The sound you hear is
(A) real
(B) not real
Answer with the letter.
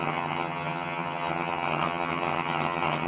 B